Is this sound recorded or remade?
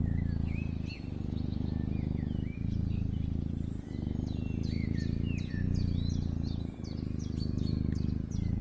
recorded